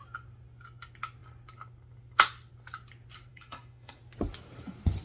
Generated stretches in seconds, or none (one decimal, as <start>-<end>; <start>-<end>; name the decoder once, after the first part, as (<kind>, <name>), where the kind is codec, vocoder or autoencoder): 3.3-4.0 (autoencoder, DAC-VAE)